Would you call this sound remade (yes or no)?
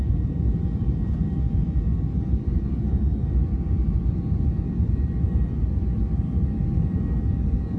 no